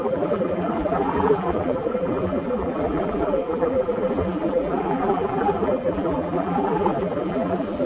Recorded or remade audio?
remade